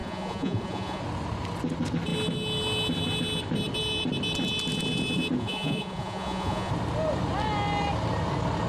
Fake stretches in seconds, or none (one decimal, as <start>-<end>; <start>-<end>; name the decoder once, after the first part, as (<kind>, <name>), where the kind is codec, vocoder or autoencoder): 0.0-1.0 (vocoder, Vocos); 5.4-6.7